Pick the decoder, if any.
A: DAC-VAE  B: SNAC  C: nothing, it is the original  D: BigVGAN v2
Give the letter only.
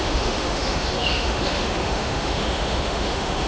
A